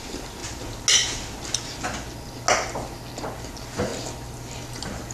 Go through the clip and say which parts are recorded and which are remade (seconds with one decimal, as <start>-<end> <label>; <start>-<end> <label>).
0.0-0.4 remade; 0.4-3.5 recorded; 3.5-3.9 remade; 3.9-5.1 recorded